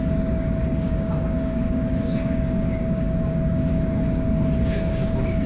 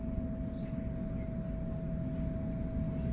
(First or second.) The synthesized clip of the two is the first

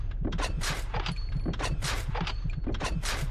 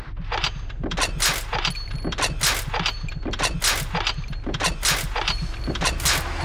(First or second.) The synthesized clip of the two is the first